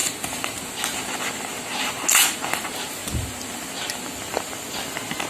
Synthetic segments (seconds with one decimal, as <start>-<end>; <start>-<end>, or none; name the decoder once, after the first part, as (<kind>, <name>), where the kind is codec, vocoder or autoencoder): none